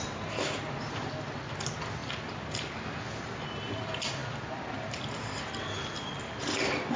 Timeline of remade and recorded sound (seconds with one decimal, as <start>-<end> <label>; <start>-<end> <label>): 0.0-7.0 recorded